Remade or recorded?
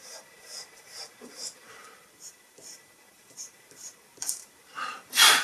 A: remade